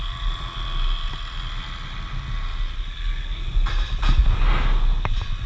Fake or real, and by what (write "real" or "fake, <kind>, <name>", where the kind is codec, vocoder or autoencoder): real